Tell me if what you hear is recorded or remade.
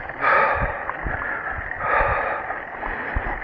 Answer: recorded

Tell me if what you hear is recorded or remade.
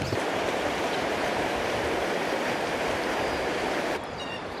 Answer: remade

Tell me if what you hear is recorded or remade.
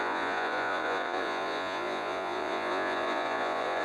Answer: remade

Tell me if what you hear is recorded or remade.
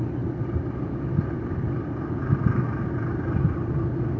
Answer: recorded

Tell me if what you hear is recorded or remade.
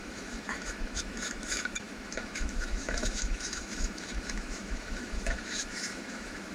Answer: remade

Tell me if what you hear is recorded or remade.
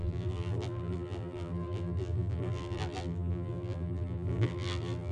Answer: remade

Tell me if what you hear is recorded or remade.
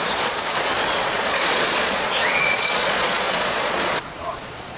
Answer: remade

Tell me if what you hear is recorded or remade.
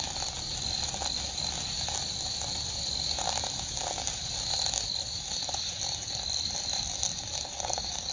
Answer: recorded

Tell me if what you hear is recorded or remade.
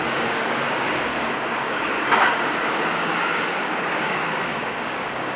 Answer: remade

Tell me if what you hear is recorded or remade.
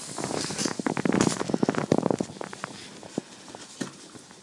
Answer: recorded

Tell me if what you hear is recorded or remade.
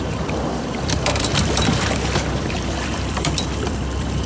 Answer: remade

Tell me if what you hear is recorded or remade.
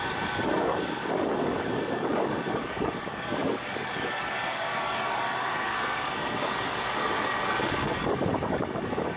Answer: remade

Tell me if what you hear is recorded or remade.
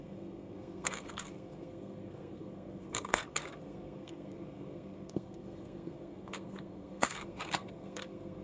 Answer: remade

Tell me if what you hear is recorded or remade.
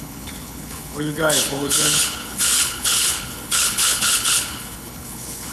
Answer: remade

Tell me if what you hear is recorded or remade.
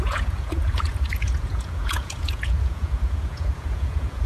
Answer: remade